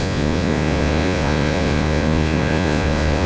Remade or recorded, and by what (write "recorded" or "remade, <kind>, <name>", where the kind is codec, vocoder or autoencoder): remade, vocoder, Vocos